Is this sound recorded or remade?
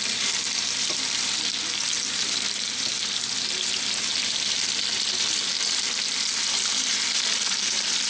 remade